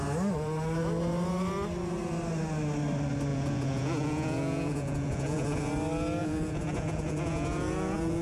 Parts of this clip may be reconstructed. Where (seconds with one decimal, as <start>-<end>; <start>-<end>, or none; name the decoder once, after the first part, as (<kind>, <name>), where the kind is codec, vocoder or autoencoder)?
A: 3.3-5.7 (vocoder, Vocos); 6.2-8.2